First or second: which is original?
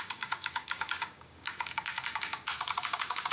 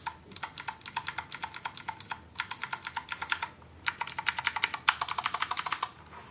second